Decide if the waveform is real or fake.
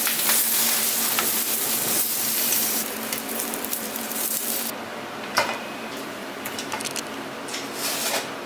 fake